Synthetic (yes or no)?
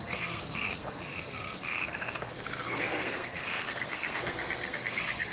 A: yes